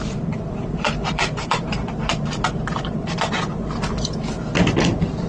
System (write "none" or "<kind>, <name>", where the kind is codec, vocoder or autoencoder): vocoder, BigVGAN v2